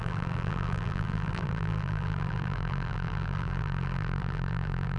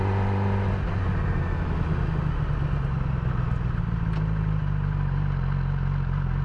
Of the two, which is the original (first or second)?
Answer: second